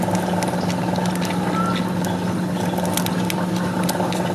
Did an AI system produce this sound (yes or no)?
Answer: no